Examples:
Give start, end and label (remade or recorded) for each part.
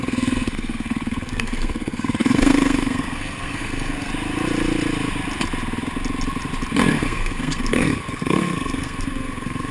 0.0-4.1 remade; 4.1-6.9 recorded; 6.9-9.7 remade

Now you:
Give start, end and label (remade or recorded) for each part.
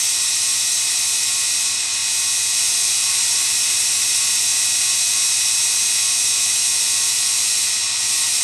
0.0-2.0 remade; 2.0-3.1 recorded; 3.1-4.5 remade; 4.5-8.0 recorded; 8.0-8.4 remade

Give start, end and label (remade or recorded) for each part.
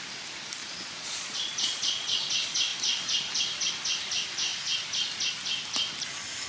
0.0-0.6 recorded; 0.6-2.3 remade; 2.3-6.5 recorded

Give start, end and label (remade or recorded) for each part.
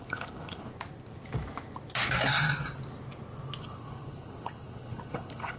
0.0-0.7 remade; 0.7-3.6 recorded; 3.6-5.6 remade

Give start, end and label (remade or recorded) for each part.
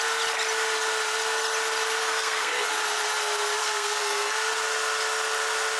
0.0-2.0 recorded; 2.0-2.7 remade; 2.7-3.6 recorded; 3.6-4.5 remade; 4.5-5.8 recorded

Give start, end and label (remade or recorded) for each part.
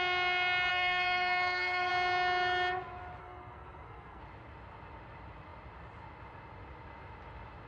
0.0-0.7 recorded; 0.7-1.9 remade; 1.9-3.2 recorded; 3.2-4.2 remade; 4.2-7.7 recorded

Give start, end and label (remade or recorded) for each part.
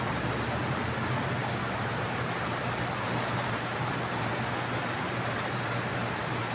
0.0-0.8 remade; 0.8-1.8 recorded; 1.8-4.3 remade; 4.3-4.8 recorded; 4.8-6.5 remade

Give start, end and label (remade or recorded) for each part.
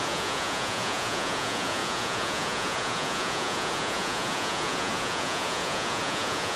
0.0-6.6 remade